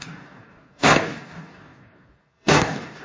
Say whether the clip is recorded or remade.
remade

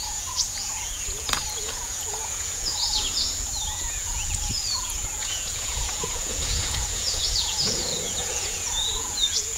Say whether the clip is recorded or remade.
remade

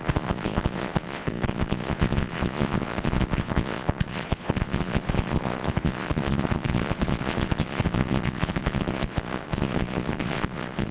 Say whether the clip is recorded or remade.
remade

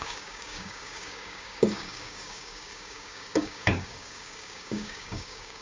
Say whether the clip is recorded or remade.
remade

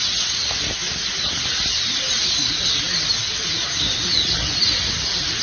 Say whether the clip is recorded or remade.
recorded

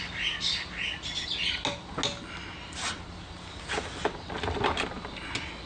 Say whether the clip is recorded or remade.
recorded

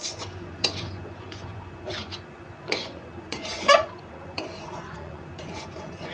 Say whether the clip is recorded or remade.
remade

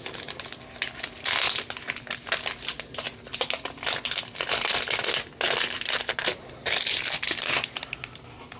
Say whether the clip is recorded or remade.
recorded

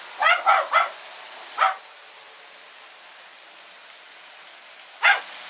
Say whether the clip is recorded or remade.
recorded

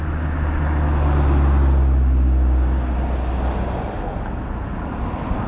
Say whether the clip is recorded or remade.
recorded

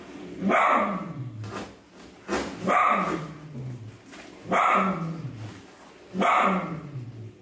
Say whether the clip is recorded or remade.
recorded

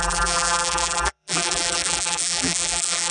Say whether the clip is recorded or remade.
remade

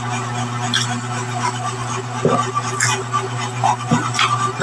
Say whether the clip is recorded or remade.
recorded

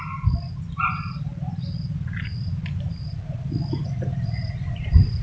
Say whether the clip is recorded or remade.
recorded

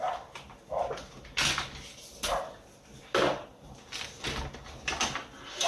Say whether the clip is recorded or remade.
recorded